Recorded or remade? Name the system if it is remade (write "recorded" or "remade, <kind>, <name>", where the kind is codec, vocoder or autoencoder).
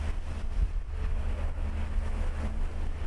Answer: recorded